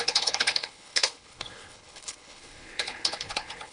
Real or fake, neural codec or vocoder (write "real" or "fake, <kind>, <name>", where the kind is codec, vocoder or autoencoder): fake, codec, HILCodec